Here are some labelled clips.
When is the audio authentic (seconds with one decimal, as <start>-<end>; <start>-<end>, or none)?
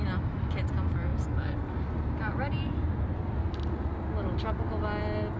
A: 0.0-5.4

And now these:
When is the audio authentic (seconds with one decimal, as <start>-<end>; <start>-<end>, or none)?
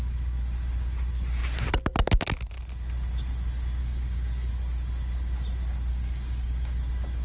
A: 0.0-3.8; 4.5-5.9; 6.8-7.2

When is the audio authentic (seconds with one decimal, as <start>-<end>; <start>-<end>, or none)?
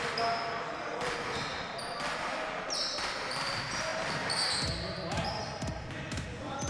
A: 0.0-6.7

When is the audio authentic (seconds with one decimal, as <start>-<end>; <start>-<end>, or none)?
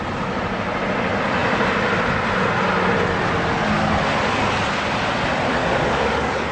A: 0.0-5.6